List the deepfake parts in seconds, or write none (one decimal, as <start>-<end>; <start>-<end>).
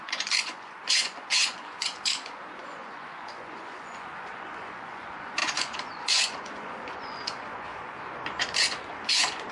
0.0-9.5